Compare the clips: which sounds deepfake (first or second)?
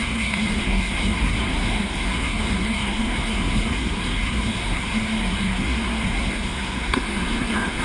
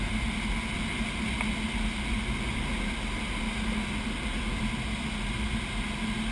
first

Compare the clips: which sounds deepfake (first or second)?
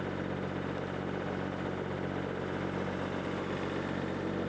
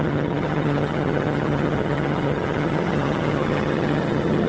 second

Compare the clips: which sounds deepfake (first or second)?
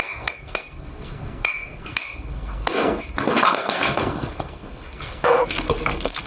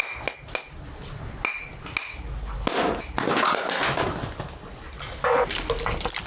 first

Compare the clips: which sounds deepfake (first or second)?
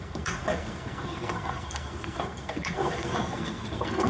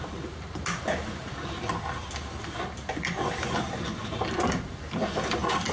first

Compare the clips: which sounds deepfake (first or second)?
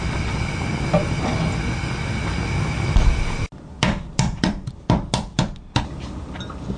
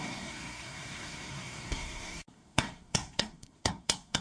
second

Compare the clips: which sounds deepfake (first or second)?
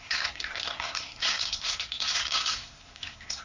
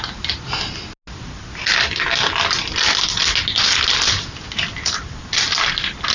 first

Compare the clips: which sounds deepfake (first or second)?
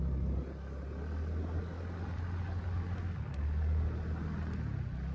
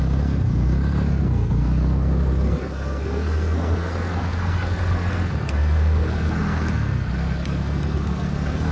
second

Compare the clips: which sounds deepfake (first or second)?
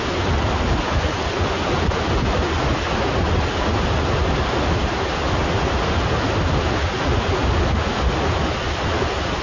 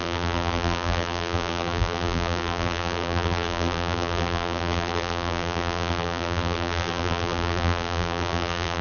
second